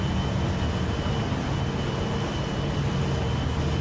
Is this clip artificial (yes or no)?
no